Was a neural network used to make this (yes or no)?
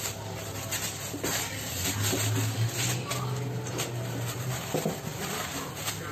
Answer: no